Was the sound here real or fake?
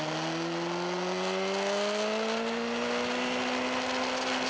real